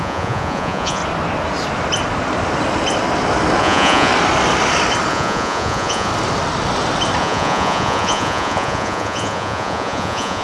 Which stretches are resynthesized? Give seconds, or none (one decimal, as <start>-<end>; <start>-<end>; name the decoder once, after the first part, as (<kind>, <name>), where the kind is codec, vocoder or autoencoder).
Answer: 0.0-1.0 (vocoder, Vocos); 3.6-4.1; 5.1-6.1; 7.2-10.4